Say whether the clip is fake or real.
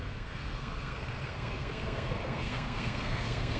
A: fake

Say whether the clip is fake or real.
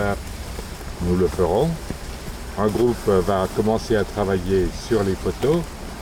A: real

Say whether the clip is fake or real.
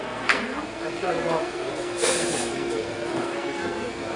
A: fake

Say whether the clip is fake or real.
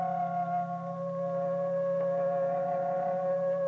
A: real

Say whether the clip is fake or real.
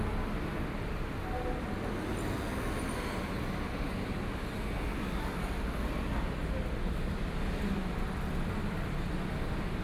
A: real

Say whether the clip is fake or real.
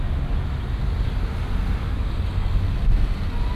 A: real